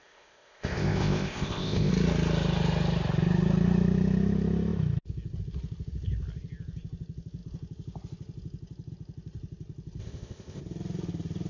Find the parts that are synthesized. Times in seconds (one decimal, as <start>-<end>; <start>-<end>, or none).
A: 0.0-1.9; 10.0-10.6